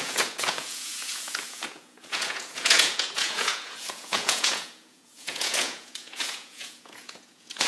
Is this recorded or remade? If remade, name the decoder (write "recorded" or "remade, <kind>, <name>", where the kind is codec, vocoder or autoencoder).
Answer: remade, vocoder, Vocos